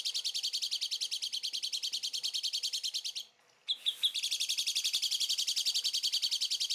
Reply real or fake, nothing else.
real